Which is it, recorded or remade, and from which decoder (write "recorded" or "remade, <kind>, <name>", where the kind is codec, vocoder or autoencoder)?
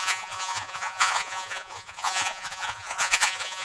remade, vocoder, Vocos